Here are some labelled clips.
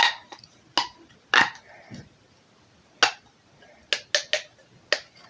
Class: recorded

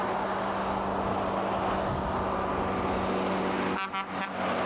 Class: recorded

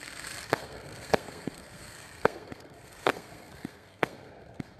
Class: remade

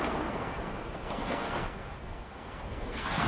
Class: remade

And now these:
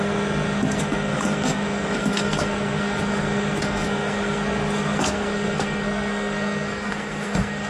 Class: remade